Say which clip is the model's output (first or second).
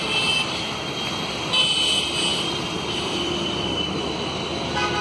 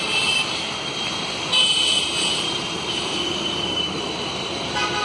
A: second